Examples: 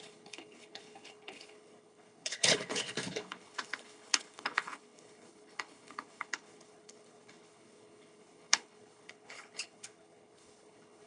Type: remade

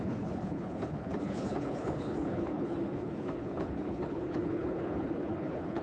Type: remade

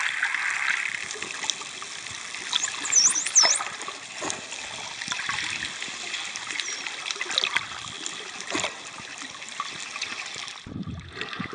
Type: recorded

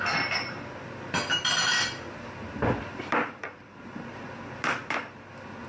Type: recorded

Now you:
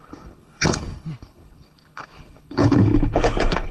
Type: remade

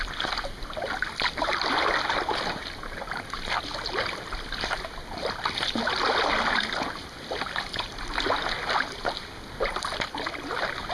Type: recorded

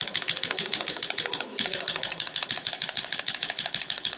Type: remade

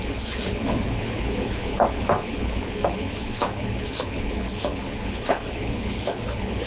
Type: remade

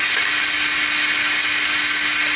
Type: recorded